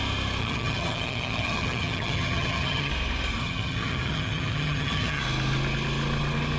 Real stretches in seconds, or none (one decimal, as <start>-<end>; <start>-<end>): 0.0-0.4; 2.9-3.4; 5.2-6.6